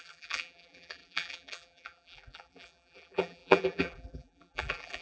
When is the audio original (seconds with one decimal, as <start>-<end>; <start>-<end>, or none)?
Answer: none